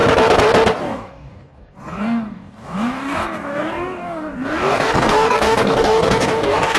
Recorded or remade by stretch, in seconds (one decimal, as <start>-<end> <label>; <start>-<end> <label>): 0.0-0.8 recorded; 0.8-6.8 remade